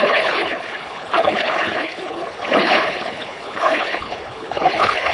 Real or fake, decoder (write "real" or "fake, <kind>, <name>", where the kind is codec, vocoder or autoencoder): fake, codec, HILCodec